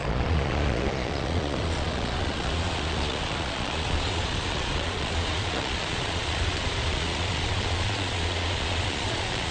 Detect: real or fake fake